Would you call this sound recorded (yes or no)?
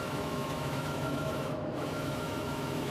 no